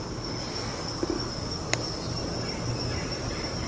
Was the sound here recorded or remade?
recorded